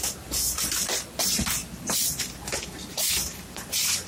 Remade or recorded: recorded